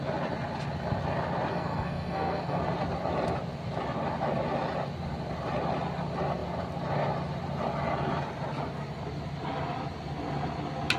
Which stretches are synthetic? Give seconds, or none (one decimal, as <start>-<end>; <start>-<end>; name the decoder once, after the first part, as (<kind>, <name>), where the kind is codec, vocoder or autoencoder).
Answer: 1.5-2.6 (codec, SNAC)